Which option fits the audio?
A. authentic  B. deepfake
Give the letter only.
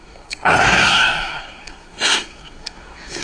B